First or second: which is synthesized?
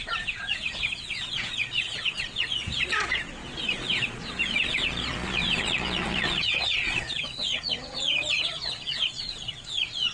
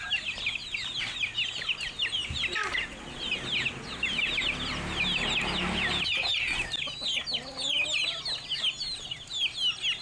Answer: first